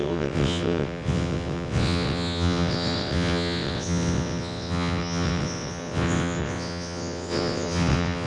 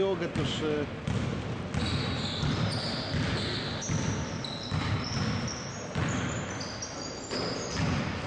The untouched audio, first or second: second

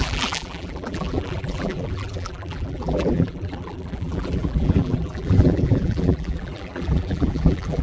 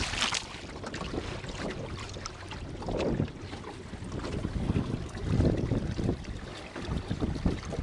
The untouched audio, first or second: second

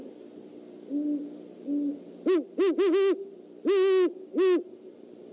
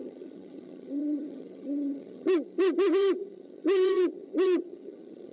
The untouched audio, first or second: first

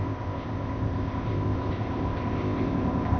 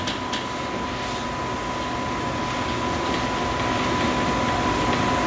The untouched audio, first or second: second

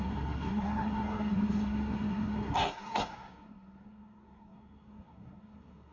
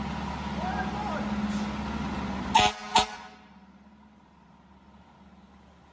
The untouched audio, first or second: second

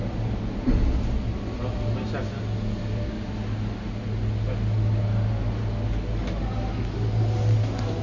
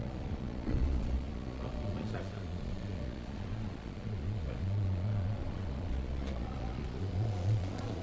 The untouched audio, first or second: first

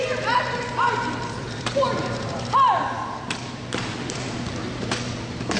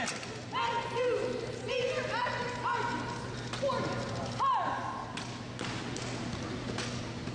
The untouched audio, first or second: second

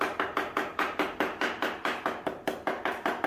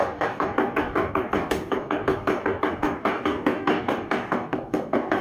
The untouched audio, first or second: first